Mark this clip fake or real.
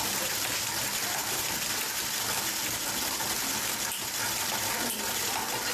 real